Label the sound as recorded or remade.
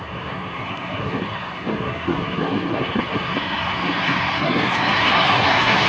remade